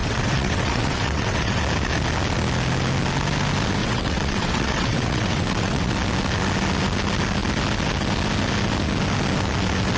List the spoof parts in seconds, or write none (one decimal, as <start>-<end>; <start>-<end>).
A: 0.0-1.6; 3.8-5.9

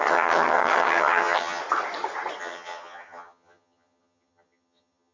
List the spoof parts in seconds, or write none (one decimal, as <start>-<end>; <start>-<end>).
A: 0.0-1.6; 2.4-5.1

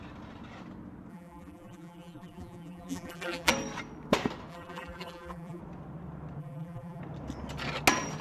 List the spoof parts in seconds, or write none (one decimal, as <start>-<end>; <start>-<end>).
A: 1.1-3.5; 4.5-5.6; 6.4-7.0

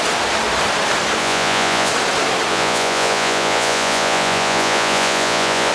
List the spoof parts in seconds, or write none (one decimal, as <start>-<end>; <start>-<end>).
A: 1.2-1.9; 2.5-5.7

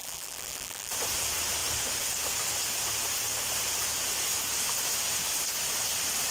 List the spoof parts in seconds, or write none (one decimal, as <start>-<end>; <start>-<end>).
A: 0.0-0.9

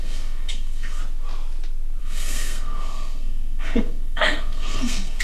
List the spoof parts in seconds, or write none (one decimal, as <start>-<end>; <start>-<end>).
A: 0.0-1.0; 2.0-5.2